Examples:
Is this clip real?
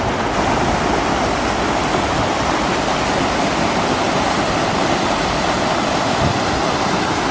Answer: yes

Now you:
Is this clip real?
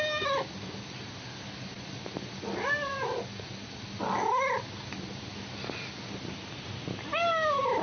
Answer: yes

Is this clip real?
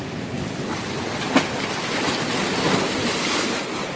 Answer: yes